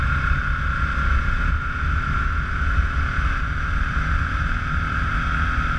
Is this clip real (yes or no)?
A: yes